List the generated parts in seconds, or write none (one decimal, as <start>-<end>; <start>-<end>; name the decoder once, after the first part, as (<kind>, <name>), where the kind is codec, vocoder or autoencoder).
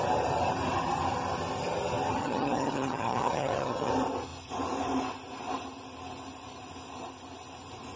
2.2-3.9 (vocoder, HiFi-GAN)